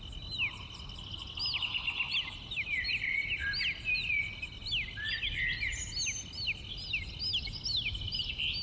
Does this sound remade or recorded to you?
recorded